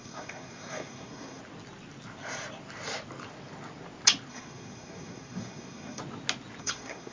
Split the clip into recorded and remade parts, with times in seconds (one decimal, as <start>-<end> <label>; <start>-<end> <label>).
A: 0.0-1.4 remade; 1.4-4.3 recorded; 4.3-6.0 remade; 6.0-6.6 recorded; 6.6-7.1 remade